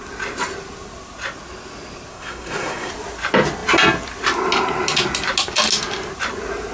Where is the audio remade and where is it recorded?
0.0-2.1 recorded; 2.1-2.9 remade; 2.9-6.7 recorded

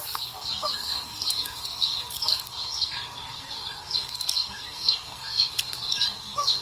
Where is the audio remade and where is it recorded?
0.0-6.6 remade